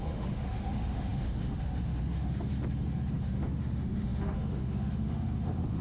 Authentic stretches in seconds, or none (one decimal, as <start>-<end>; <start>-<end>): 2.5-3.1

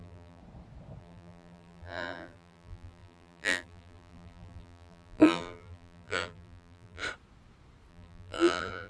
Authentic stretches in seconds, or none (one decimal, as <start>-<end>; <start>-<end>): 0.4-1.0; 7.0-7.9

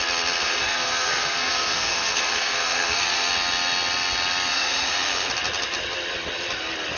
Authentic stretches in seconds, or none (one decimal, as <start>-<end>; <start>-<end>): 0.0-0.4; 3.3-4.5; 5.3-7.0

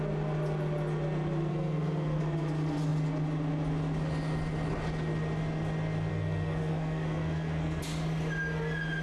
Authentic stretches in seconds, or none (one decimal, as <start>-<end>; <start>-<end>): 0.0-1.5; 2.2-6.1; 7.8-9.0

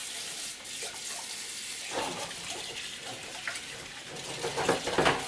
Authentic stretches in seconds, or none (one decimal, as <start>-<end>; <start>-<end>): 0.0-5.3

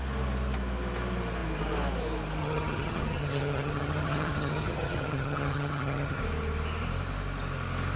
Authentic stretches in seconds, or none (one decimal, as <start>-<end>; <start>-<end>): 0.0-2.4; 6.2-8.0

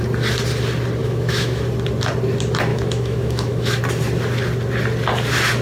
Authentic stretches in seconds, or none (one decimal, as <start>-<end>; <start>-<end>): 0.0-1.0; 1.6-2.7; 3.8-5.6